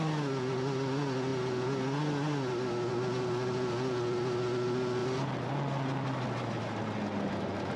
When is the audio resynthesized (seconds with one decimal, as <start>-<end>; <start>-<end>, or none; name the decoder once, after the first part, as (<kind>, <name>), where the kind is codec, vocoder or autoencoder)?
none